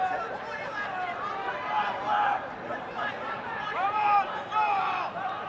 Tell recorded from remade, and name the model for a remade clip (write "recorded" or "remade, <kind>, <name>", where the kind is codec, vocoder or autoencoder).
remade, vocoder, BigVGAN v2